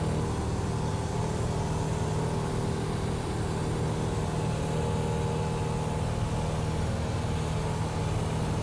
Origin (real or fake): real